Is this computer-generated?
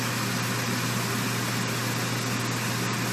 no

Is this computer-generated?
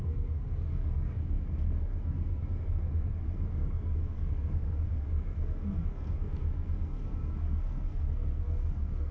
yes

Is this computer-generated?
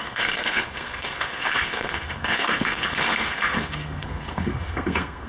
yes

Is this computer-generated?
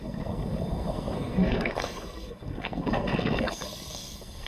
yes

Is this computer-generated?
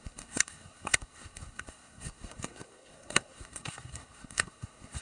yes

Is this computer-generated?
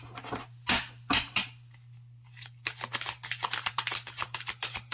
no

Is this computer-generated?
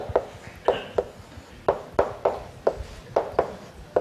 no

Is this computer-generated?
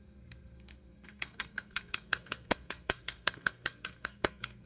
yes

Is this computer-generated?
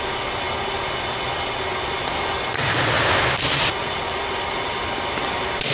no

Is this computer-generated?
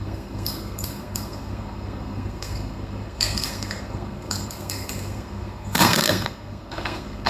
yes